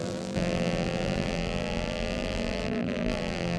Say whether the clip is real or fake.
fake